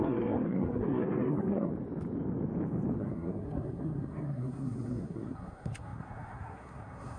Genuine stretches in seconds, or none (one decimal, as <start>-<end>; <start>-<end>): 1.7-3.0